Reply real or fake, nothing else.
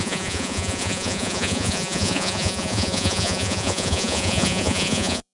fake